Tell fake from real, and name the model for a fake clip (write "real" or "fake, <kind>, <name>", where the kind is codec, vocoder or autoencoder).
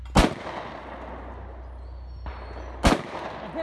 real